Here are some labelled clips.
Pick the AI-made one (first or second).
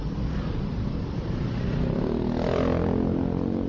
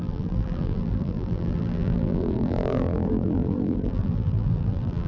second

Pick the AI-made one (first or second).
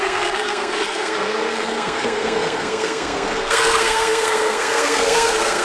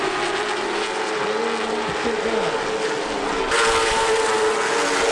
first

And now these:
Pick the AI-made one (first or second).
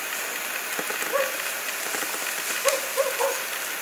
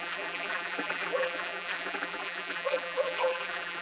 second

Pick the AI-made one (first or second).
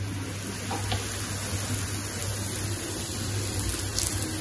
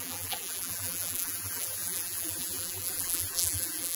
second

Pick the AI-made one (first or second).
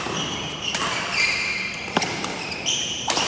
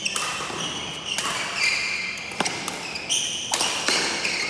first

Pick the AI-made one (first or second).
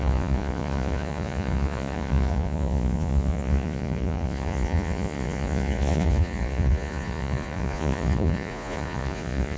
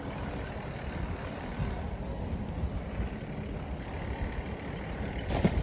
first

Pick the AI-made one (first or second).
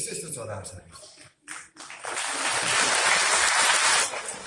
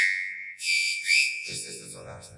second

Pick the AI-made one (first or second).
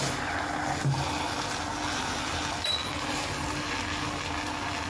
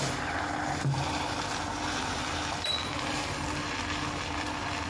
second